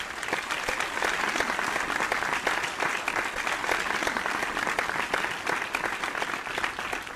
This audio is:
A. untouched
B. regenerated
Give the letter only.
A